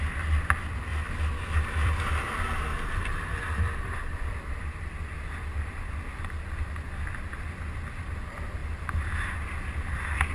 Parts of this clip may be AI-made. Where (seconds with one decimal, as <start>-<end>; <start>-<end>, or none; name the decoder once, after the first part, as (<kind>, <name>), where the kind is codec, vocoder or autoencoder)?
0.9-4.9 (vocoder, BigVGAN v2)